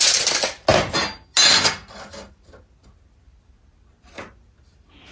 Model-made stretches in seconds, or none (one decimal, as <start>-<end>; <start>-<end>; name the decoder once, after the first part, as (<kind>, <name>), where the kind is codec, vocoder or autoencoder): none